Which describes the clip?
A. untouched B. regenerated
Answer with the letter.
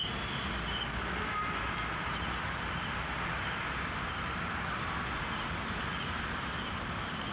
A